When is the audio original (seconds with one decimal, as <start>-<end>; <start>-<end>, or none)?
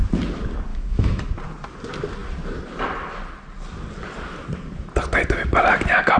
0.0-0.7; 1.2-6.2